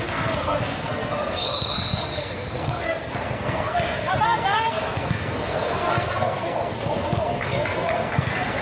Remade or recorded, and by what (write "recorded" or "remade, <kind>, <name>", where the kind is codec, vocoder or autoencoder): remade, codec, SNAC